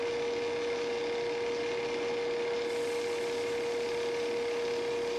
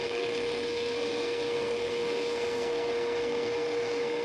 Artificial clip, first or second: second